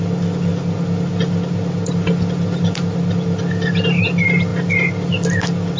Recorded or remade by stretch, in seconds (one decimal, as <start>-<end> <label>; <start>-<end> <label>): 0.0-5.8 recorded